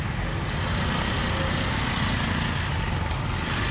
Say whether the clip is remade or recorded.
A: recorded